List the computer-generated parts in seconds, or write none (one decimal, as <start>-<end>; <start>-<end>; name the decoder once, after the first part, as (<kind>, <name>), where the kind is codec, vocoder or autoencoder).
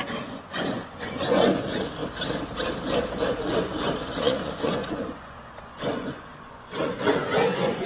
0.0-2.0 (vocoder, Vocos); 3.3-7.9